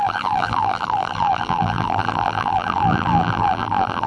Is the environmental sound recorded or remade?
remade